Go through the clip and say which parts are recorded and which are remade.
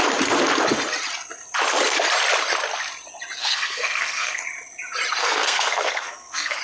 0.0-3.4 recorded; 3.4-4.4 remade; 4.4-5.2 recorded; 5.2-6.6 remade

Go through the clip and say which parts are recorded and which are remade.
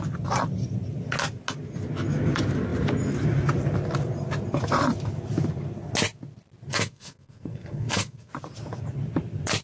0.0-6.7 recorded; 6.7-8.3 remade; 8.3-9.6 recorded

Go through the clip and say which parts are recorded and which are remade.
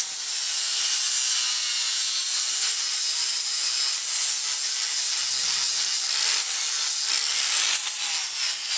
0.0-2.2 recorded; 2.2-3.7 remade; 3.7-8.8 recorded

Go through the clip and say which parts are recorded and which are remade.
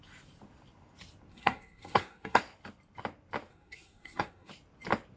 0.0-1.3 recorded; 1.3-2.4 remade; 2.4-3.5 recorded; 3.5-4.5 remade; 4.5-5.2 recorded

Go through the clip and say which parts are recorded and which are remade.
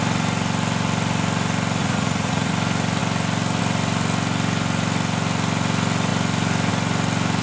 0.0-1.8 recorded; 1.8-2.5 remade; 2.5-7.4 recorded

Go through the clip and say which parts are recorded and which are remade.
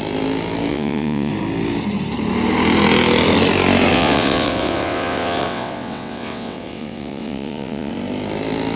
0.0-0.7 recorded; 0.7-1.3 remade; 1.3-3.9 recorded; 3.9-7.9 remade; 7.9-8.8 recorded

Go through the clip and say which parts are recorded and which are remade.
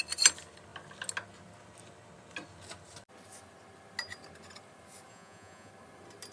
0.0-5.1 recorded; 5.1-5.7 remade; 5.7-6.3 recorded